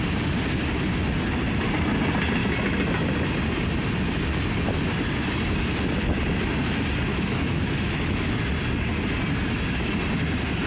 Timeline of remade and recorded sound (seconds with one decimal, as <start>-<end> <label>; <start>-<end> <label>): 0.0-7.1 recorded; 7.1-8.4 remade; 8.4-10.7 recorded